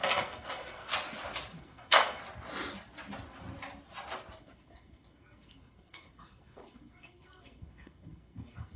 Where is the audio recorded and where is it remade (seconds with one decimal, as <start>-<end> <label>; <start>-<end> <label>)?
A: 0.0-0.9 remade; 0.9-1.6 recorded; 1.6-2.2 remade; 2.2-4.4 recorded; 4.4-8.8 remade